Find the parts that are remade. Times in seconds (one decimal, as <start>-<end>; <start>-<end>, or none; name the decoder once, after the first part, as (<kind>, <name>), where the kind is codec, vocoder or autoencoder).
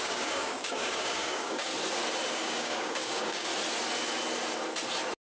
0.0-1.7 (codec, DAC); 2.3-3.5